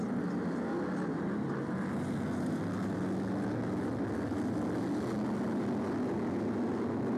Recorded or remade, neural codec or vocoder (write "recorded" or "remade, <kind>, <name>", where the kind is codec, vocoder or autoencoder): recorded